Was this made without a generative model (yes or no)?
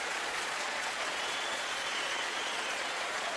no